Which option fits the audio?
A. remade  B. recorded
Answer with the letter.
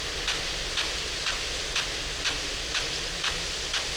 B